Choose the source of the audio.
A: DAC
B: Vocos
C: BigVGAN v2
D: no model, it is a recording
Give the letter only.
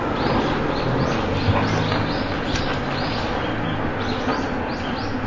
D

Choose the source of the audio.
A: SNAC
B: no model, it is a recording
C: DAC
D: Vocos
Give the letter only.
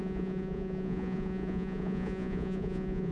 D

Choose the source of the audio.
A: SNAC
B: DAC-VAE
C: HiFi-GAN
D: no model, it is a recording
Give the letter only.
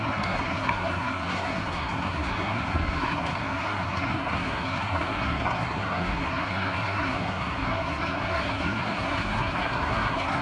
A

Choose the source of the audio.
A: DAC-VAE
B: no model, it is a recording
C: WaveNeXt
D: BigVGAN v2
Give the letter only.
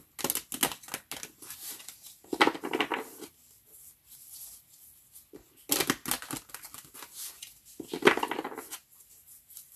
B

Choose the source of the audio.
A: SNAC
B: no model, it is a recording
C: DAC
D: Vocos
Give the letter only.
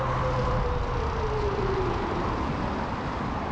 B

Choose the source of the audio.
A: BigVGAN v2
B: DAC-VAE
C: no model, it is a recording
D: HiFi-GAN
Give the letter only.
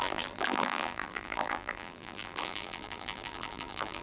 A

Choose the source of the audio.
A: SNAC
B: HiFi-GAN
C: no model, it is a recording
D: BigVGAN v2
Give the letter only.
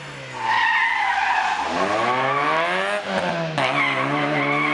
C